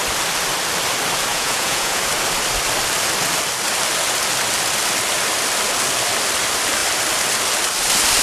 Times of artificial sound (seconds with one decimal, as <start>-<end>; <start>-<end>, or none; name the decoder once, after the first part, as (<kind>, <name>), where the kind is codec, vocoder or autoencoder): 1.3-2.0 (vocoder, Vocos)